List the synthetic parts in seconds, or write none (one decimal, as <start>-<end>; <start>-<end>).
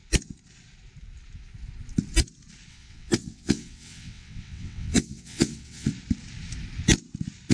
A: 2.7-5.9